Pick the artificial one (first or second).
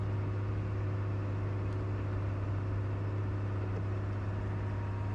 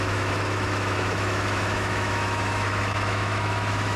second